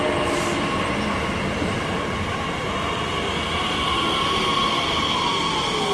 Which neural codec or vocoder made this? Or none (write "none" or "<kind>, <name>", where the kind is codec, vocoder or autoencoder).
none